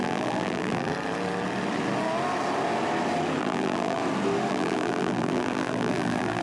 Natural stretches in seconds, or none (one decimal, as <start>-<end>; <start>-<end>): 0.9-3.4; 4.0-4.5